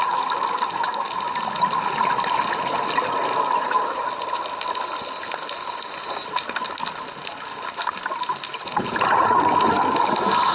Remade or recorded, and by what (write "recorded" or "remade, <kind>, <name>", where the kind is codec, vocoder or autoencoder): recorded